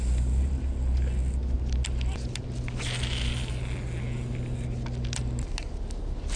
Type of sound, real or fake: real